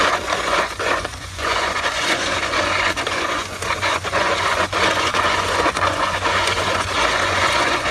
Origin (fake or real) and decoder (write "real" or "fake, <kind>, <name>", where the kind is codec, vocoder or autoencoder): fake, vocoder, Vocos